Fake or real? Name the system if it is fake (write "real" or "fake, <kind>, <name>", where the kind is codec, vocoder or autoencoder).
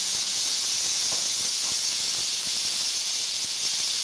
fake, vocoder, Vocos